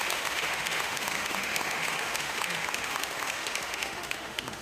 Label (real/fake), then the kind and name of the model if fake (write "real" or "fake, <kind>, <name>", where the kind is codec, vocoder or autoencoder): fake, autoencoder, DAC-VAE